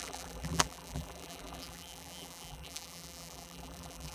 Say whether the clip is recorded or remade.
remade